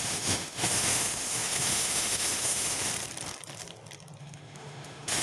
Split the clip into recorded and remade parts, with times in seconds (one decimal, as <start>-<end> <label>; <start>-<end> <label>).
0.0-2.9 remade; 2.9-4.2 recorded; 4.2-5.2 remade